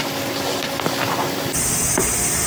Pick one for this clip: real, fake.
real